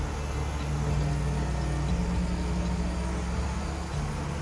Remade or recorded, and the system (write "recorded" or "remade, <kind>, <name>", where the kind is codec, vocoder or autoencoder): recorded